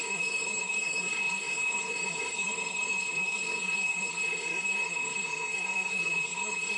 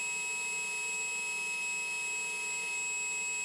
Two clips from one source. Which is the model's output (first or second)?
first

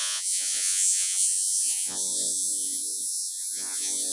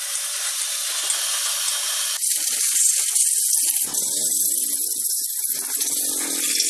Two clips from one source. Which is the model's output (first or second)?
first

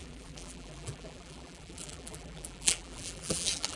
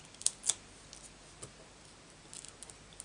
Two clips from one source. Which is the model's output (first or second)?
first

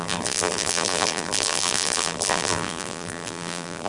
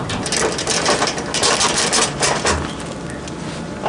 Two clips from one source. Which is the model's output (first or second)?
first